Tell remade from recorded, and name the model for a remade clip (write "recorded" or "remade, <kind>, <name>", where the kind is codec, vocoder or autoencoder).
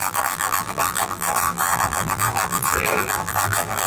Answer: remade, vocoder, BigVGAN v2